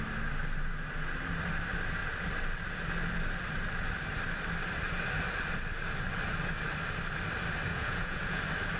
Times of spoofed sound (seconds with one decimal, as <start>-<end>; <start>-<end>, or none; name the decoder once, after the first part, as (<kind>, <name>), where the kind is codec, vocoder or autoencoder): 7.7-8.4 (vocoder, Vocos)